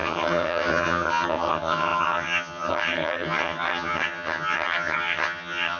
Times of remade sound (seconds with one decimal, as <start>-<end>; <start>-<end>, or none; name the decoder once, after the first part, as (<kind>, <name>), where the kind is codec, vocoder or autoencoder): 0.0-5.8 (vocoder, HiFi-GAN)